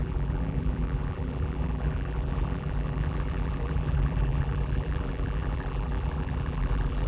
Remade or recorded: remade